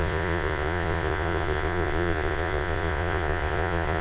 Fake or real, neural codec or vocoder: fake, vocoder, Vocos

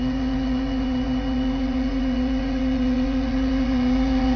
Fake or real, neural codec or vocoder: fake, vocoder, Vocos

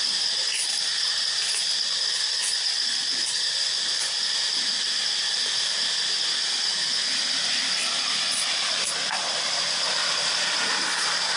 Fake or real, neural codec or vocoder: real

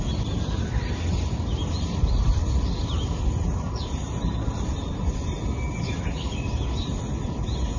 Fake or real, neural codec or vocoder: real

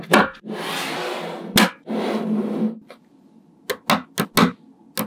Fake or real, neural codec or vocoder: real